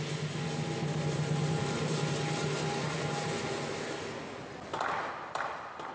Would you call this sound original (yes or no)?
yes